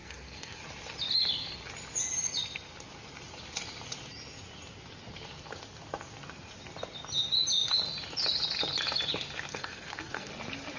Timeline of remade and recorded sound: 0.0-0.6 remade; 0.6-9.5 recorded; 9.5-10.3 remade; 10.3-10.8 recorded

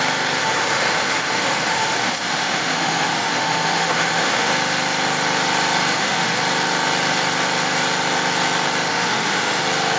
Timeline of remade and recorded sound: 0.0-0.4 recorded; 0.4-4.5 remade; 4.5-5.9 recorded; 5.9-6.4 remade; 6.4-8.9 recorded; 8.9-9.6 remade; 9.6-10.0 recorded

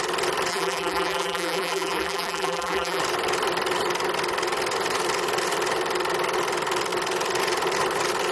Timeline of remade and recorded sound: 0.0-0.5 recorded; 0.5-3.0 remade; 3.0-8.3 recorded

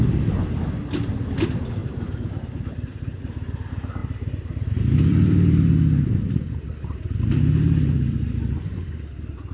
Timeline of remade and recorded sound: 0.0-1.8 recorded; 1.8-3.2 remade; 3.2-4.0 recorded; 4.0-8.9 remade; 8.9-9.5 recorded